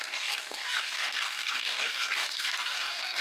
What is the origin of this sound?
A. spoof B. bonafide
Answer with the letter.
A